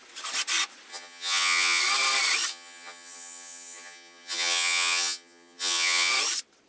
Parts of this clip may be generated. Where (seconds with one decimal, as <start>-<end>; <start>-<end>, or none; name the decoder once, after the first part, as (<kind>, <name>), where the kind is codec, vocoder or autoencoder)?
0.9-1.8 (vocoder, HiFi-GAN); 2.5-6.1